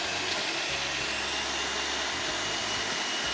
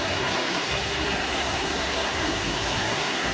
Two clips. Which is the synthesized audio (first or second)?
second